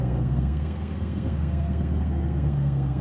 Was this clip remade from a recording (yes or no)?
yes